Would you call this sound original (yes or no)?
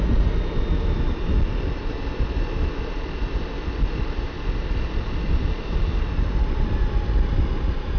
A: yes